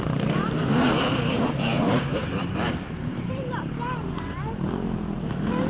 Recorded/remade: remade